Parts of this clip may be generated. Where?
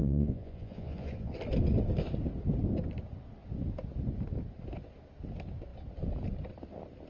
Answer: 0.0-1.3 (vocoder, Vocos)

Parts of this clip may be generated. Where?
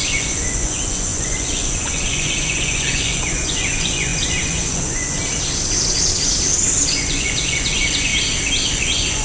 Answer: 0.0-5.2 (vocoder, Vocos); 6.9-8.1; 8.7-9.2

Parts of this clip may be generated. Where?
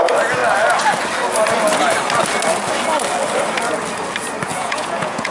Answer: 4.5-5.3 (vocoder, Vocos)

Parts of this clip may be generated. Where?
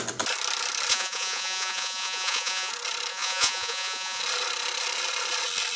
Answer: 0.9-2.7 (vocoder, Vocos); 3.1-4.2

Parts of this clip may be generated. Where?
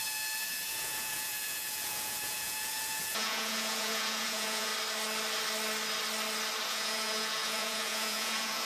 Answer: 0.0-4.7 (vocoder, Vocos); 6.7-8.7